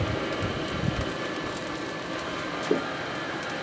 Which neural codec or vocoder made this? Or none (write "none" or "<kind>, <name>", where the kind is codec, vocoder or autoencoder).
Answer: none